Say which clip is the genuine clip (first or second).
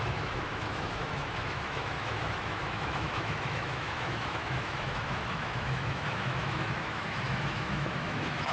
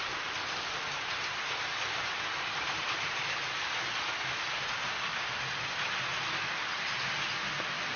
second